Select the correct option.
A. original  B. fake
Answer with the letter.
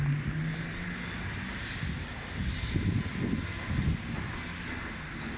A